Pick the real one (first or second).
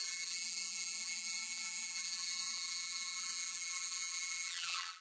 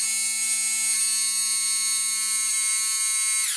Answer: second